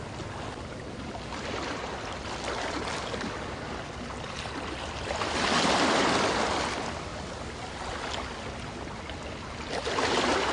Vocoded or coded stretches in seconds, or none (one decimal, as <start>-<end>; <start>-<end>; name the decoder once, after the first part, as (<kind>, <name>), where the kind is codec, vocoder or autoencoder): none